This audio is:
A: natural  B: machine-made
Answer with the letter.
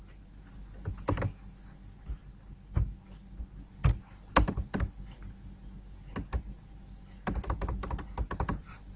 A